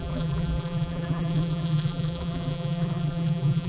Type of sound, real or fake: fake